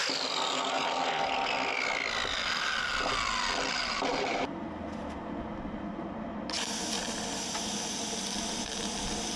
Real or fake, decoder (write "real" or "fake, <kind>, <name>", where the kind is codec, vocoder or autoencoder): real